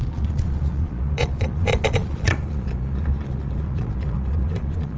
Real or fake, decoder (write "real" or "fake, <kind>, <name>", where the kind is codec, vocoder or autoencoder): fake, vocoder, Vocos